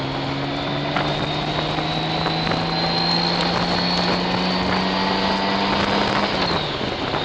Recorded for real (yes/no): yes